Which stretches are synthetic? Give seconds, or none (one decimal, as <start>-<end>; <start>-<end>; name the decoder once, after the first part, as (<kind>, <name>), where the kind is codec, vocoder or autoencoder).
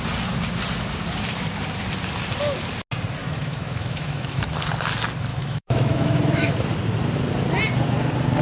3.2-4.4 (autoencoder, DAC-VAE); 5.3-6.5